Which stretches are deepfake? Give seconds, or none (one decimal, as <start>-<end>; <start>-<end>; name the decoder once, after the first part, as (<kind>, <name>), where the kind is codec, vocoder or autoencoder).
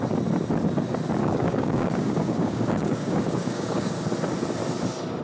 1.2-4.0 (codec, DAC)